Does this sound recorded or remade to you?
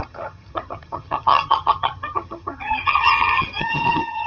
remade